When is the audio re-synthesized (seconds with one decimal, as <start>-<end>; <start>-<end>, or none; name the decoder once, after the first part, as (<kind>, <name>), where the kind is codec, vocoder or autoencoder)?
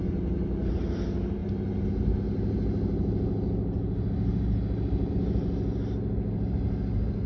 none